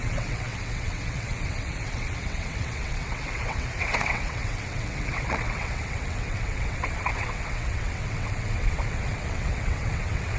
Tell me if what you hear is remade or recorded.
remade